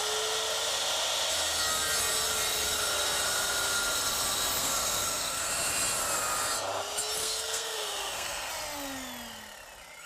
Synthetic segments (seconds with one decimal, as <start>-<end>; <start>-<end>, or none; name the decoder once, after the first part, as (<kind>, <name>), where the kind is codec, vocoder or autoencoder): 4.6-5.5 (codec, SNAC); 7.2-8.5

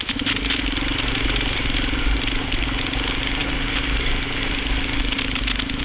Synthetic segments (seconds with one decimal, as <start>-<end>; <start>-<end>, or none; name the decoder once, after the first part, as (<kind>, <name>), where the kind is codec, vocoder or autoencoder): none

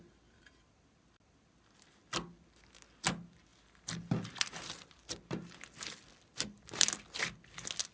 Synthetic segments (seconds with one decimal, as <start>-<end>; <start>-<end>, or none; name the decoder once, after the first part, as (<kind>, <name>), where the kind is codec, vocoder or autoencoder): none

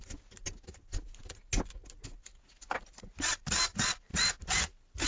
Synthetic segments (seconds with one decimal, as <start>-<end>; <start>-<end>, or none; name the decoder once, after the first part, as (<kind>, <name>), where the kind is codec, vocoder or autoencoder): none

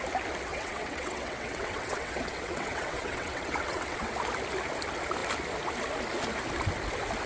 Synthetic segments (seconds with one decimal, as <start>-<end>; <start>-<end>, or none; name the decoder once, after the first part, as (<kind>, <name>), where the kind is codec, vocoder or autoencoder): 0.5-4.1 (vocoder, WaveNeXt)

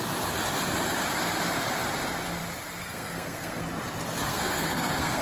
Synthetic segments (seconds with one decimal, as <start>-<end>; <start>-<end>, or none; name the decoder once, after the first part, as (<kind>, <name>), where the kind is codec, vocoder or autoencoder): 2.8-3.6 (codec, SNAC); 4.3-5.2

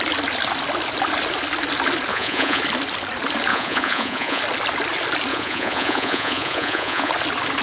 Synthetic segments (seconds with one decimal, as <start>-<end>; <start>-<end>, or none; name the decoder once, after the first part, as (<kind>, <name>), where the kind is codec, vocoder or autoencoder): 2.1-2.6 (vocoder, Vocos); 3.5-4.4; 5.3-7.1